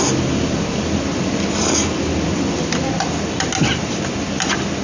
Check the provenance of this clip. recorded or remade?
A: recorded